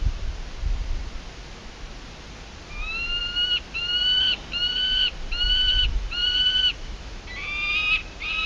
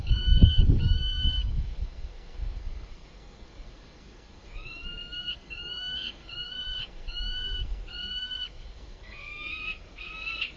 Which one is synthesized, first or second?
second